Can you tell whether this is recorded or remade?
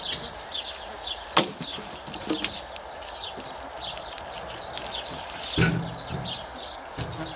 recorded